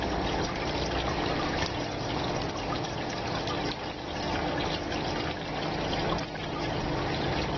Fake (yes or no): no